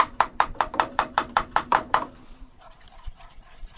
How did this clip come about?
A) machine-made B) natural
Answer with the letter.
A